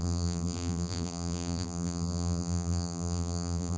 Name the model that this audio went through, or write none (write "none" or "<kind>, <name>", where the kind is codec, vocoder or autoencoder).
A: vocoder, BigVGAN v2